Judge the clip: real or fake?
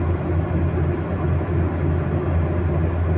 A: real